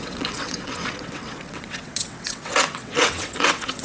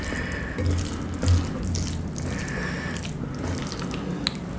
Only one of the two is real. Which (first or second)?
second